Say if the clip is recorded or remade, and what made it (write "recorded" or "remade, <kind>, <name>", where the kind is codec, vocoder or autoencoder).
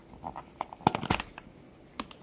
recorded